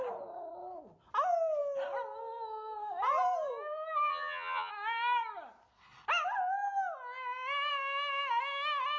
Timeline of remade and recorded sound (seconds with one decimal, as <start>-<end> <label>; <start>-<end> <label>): 0.0-4.1 recorded; 4.1-4.7 remade; 4.7-9.0 recorded